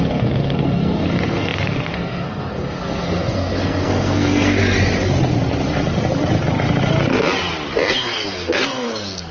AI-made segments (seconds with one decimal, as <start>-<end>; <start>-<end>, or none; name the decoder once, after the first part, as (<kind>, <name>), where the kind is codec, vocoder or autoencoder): 0.0-4.6 (codec, SNAC); 7.9-9.3